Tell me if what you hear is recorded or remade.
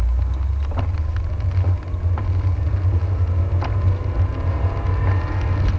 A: recorded